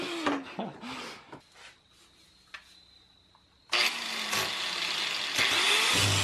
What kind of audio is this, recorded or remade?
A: recorded